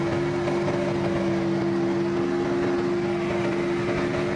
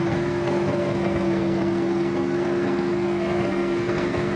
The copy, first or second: second